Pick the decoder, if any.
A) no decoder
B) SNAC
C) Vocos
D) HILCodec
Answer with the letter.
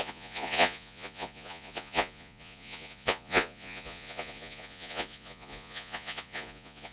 C